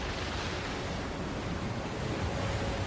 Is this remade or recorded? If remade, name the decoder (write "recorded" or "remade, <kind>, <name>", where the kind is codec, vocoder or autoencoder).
recorded